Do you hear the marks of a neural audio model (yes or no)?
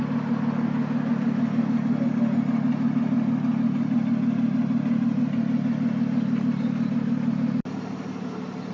no